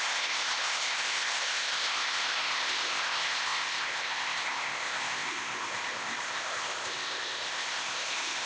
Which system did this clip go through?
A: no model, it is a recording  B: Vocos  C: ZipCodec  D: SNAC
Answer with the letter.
C